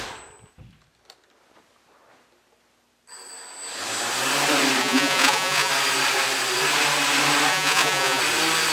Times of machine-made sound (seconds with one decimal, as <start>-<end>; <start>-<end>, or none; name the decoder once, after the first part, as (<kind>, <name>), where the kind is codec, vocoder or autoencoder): 4.8-5.7 (vocoder, Vocos); 7.5-8.2